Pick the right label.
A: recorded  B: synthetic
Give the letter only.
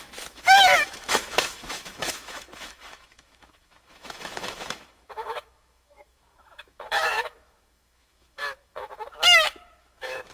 B